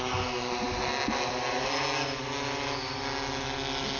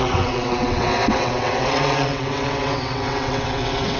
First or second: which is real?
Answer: first